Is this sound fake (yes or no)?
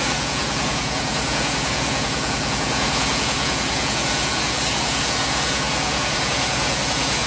yes